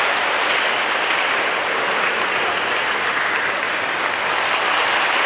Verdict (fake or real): real